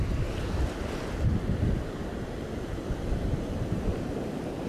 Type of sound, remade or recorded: recorded